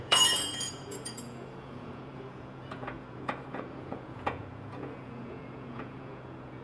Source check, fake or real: fake